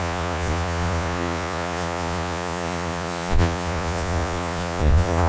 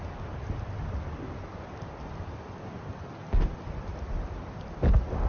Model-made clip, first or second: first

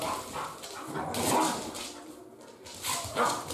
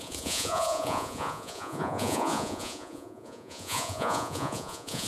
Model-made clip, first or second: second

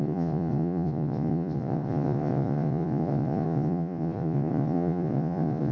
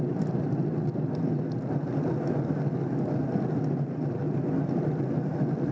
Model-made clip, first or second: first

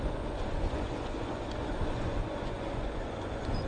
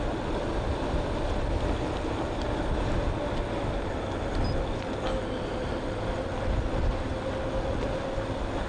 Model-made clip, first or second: first